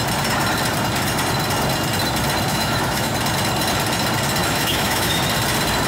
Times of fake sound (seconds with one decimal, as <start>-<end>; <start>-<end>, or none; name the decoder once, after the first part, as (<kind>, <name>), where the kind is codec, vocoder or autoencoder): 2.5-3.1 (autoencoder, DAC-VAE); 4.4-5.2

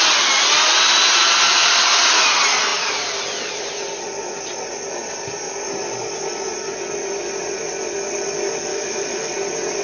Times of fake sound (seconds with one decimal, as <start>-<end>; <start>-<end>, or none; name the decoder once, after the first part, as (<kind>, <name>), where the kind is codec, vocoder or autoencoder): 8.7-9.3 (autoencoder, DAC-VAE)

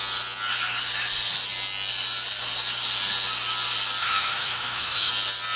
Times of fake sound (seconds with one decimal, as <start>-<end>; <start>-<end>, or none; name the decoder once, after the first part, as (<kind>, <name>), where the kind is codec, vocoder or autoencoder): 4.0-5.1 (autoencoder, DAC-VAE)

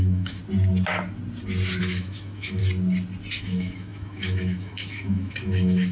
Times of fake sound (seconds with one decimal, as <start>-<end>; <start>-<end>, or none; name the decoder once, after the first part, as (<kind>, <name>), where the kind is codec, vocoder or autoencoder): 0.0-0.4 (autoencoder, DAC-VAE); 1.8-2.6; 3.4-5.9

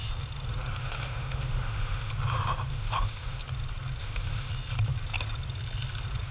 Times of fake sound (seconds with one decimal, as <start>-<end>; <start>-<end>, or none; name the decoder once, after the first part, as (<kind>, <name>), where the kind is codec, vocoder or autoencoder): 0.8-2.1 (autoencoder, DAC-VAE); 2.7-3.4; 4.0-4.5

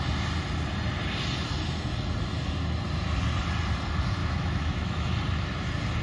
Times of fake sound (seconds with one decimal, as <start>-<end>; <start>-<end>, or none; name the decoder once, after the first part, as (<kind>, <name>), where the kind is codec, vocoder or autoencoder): 4.2-5.1 (autoencoder, DAC-VAE)